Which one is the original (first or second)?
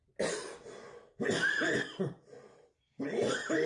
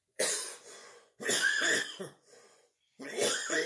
first